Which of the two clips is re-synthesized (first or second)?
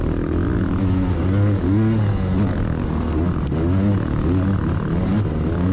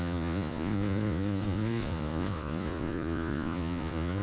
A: second